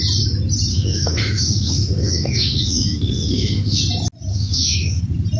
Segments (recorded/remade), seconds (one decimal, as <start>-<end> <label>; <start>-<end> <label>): 0.0-0.7 recorded; 0.7-3.8 remade; 3.8-4.3 recorded; 4.3-5.0 remade; 5.0-5.4 recorded